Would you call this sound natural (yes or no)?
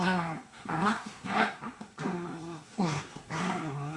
no